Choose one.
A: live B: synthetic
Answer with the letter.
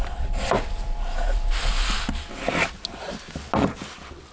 A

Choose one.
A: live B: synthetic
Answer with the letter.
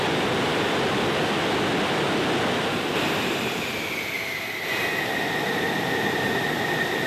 A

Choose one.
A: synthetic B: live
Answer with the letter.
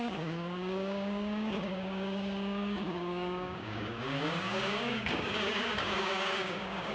A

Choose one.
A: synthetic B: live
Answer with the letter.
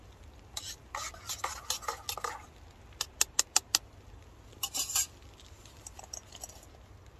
B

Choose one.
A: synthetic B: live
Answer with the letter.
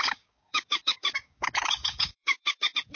A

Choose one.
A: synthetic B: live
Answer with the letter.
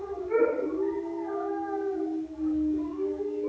A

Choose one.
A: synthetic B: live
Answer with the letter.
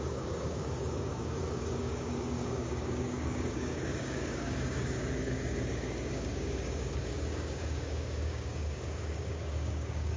A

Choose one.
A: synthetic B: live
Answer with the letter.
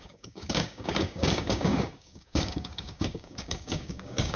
A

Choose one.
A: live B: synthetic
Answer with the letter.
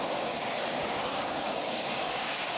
B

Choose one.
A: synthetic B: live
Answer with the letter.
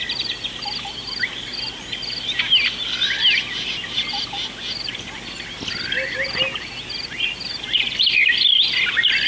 B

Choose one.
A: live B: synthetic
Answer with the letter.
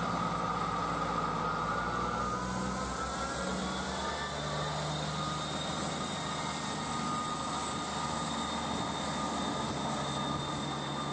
A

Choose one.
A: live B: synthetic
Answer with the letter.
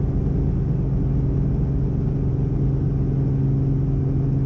A